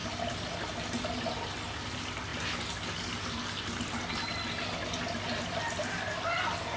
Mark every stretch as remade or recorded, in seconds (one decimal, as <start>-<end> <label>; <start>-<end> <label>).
0.0-6.8 recorded